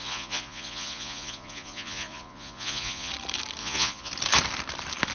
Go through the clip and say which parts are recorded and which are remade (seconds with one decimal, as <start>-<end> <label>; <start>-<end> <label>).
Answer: 0.0-3.1 remade; 3.1-3.6 recorded; 3.6-4.1 remade; 4.1-5.1 recorded

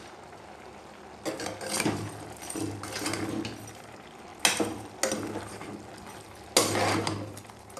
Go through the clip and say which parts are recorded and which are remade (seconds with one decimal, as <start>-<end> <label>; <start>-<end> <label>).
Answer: 0.0-7.8 recorded

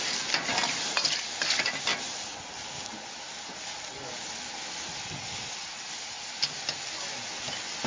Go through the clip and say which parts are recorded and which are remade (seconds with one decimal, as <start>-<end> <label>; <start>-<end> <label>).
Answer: 0.0-7.9 recorded

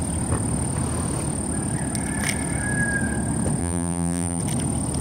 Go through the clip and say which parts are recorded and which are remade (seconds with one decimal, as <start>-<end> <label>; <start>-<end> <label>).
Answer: 0.0-3.6 recorded; 3.6-4.4 remade; 4.4-5.0 recorded